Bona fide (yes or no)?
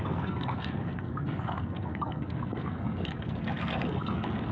no